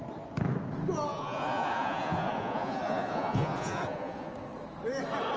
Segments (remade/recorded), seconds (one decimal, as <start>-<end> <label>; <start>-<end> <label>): 0.0-1.1 recorded; 1.1-4.3 remade; 4.3-5.4 recorded